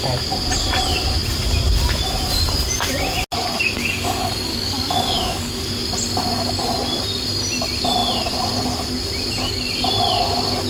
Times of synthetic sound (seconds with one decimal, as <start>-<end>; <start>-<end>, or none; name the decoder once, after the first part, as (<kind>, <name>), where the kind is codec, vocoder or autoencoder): 4.5-5.5 (codec, DAC)